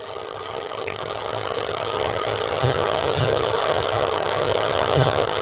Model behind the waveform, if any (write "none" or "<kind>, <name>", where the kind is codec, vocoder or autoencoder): vocoder, HiFi-GAN